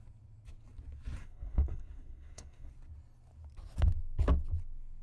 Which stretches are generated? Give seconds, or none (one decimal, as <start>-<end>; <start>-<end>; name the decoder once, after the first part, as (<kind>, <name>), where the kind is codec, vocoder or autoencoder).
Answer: 1.2-2.7 (codec, SNAC)